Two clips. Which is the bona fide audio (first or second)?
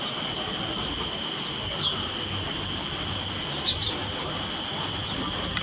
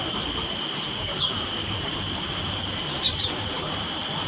first